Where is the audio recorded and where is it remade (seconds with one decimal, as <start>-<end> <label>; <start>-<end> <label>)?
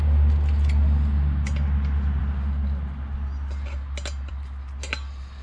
0.0-5.4 recorded